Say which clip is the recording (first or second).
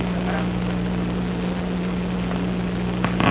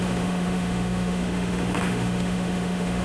first